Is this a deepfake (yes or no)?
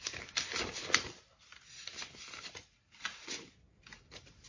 no